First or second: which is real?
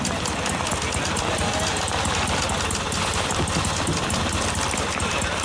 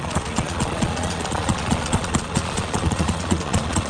first